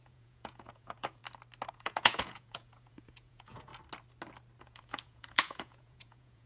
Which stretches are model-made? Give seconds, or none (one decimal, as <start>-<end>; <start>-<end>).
0.0-1.2; 1.7-3.7; 4.6-6.5